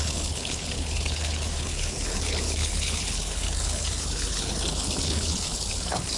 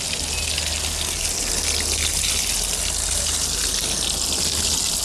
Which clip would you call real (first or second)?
second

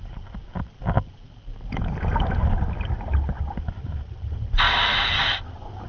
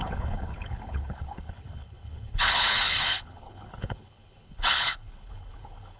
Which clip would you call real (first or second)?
first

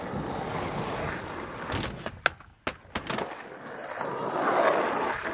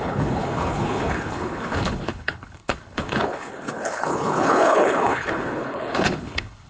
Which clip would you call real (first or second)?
first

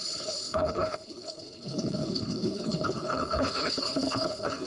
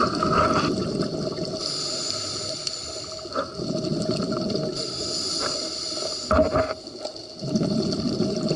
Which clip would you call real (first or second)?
second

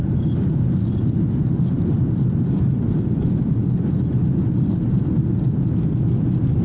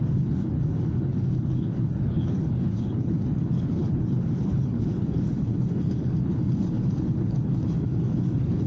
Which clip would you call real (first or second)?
first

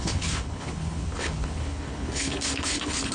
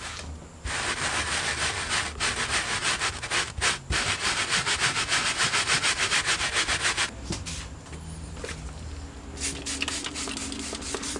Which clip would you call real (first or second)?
second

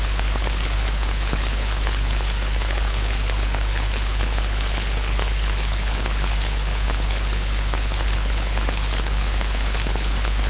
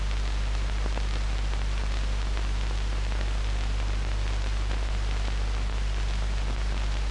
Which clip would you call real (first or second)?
second